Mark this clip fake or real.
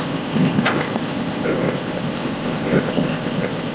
fake